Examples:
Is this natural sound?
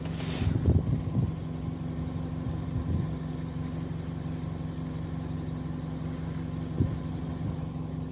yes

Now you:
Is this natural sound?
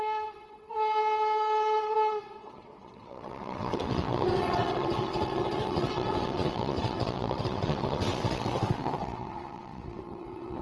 no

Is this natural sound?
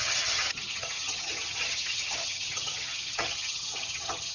no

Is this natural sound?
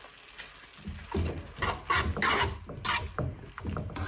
yes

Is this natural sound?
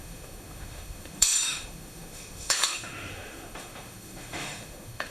no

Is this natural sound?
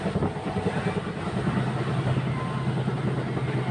yes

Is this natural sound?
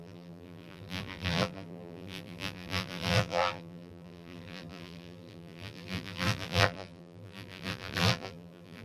no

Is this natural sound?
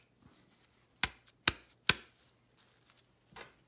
yes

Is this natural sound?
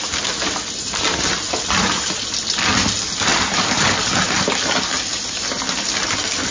yes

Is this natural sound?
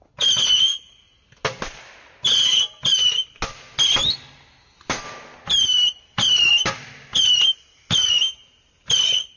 yes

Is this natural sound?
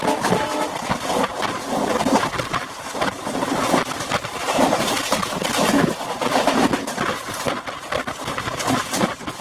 yes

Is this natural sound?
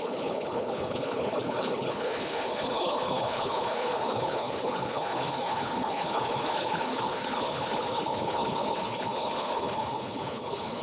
no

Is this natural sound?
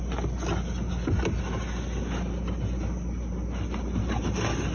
yes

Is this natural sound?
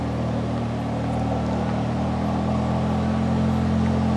yes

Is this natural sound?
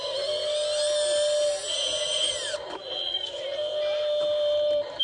yes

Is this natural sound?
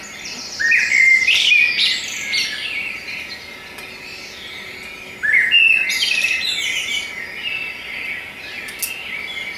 yes